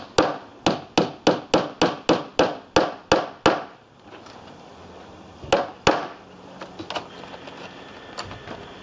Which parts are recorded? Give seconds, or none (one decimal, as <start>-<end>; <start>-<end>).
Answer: 0.0-8.8